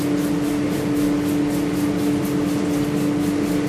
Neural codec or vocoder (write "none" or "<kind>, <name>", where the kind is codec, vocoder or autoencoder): none